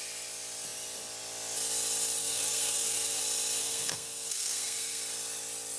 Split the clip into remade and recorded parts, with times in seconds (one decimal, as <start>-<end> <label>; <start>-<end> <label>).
0.0-2.2 recorded; 2.2-3.2 remade; 3.2-3.6 recorded; 3.6-5.0 remade; 5.0-5.8 recorded